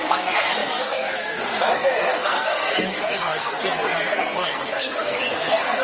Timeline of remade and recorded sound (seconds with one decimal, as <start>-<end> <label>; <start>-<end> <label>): 0.0-5.8 remade